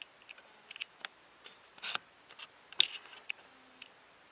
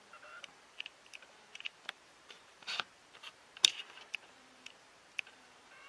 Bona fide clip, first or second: first